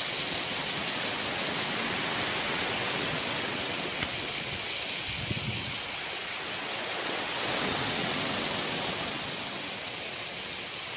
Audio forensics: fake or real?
fake